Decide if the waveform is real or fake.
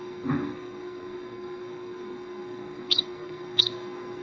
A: fake